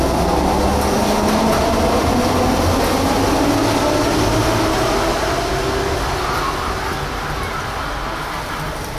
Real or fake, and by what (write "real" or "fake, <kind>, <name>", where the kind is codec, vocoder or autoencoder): real